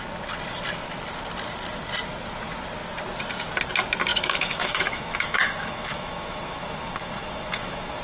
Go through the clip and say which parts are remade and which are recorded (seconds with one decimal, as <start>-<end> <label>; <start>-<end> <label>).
0.0-4.1 recorded; 4.1-8.0 remade

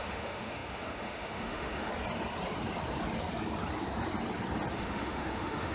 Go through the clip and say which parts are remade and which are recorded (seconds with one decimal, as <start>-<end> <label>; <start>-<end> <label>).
0.0-1.9 remade; 1.9-4.7 recorded; 4.7-5.7 remade

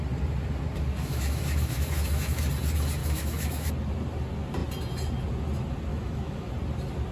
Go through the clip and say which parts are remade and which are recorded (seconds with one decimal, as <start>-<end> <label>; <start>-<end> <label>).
0.0-0.9 recorded; 0.9-2.4 remade; 2.4-3.0 recorded; 3.0-3.7 remade; 3.7-5.9 recorded; 5.9-6.5 remade; 6.5-7.1 recorded

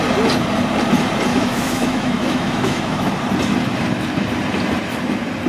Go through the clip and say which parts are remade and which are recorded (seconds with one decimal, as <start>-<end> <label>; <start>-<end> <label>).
0.0-1.3 recorded; 1.3-3.1 remade; 3.1-5.5 recorded

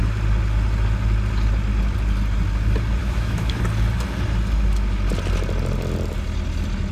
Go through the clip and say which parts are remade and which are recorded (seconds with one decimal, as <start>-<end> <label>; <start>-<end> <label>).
0.0-3.0 recorded; 3.0-3.6 remade; 3.6-6.9 recorded

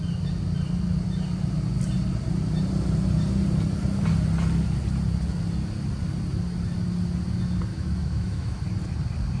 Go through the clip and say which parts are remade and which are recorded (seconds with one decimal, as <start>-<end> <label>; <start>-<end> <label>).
0.0-7.7 recorded; 7.7-8.6 remade; 8.6-9.4 recorded